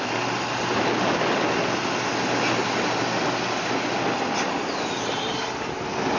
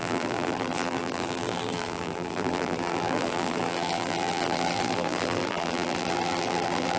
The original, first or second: first